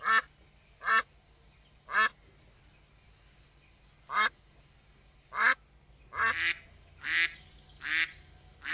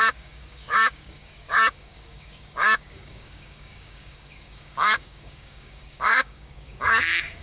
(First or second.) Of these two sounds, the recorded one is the first